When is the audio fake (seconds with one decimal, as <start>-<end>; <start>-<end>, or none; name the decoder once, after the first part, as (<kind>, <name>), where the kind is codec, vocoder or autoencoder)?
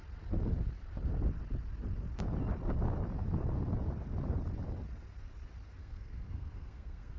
5.8-7.2 (codec, SNAC)